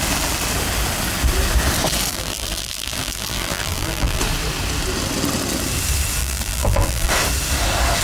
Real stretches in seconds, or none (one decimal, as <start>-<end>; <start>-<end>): 0.0-2.1; 4.2-6.2; 7.1-8.0